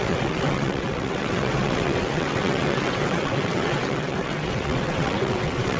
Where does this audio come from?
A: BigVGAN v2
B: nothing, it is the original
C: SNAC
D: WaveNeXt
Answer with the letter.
D